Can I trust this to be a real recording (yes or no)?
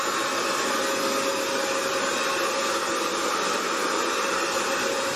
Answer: yes